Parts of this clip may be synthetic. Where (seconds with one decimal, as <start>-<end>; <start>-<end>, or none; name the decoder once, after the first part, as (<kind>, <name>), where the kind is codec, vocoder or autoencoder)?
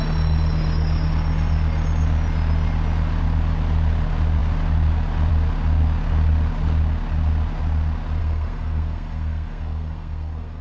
8.2-10.6 (codec, SNAC)